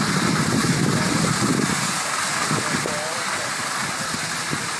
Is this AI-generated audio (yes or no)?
no